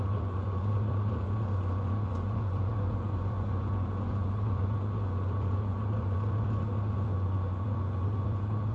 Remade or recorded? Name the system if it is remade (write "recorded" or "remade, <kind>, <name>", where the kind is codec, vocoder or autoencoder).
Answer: remade, vocoder, Vocos